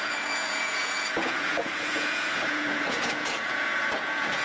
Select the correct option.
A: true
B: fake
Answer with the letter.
B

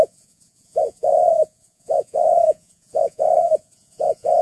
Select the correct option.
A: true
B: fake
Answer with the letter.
B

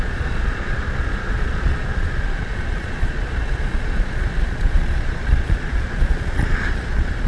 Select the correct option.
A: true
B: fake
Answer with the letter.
B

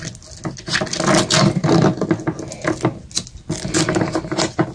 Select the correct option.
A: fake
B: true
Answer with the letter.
B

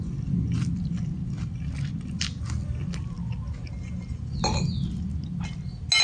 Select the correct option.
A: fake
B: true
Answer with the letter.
B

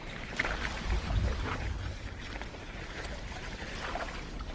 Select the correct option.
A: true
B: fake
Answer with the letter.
B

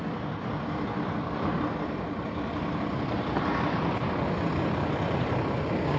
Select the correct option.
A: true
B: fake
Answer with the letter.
A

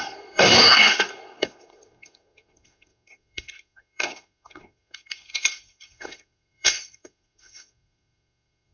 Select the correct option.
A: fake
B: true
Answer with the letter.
A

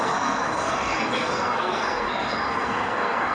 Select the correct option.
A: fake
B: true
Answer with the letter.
A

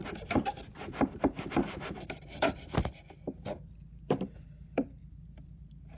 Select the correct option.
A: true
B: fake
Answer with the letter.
B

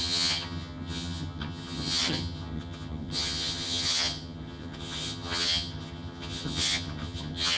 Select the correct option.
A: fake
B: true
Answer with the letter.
A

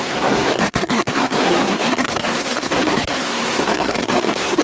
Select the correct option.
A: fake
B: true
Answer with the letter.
A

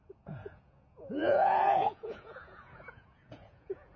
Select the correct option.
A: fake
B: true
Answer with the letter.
A